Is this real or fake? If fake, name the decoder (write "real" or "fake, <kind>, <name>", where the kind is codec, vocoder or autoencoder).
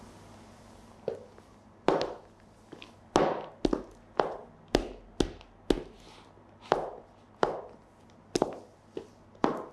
real